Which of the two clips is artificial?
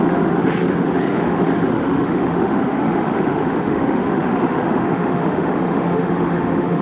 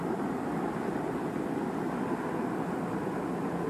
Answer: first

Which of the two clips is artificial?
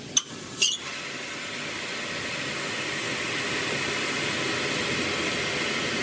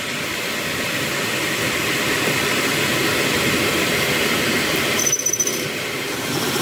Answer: second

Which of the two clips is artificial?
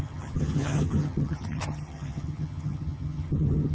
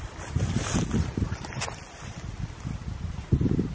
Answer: first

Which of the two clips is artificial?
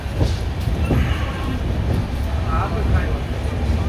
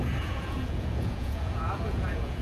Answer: second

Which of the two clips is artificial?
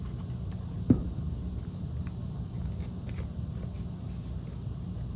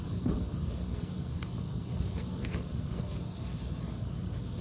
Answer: second